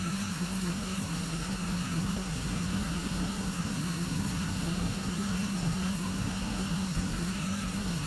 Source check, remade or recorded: remade